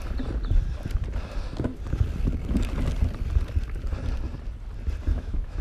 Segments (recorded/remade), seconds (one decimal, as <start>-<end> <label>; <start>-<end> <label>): 0.0-5.1 recorded; 5.1-5.6 remade